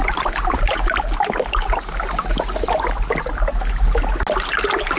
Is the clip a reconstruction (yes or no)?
no